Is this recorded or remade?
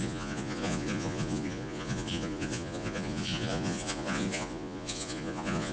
remade